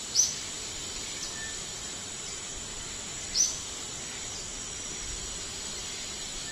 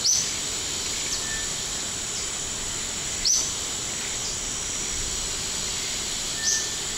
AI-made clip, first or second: first